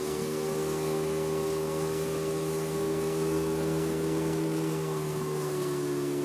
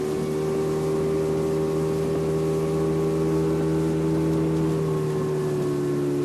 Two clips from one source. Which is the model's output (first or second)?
first